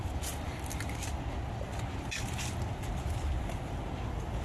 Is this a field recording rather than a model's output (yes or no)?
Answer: yes